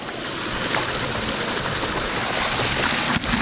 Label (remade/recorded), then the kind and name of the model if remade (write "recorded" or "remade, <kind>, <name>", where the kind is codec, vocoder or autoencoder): recorded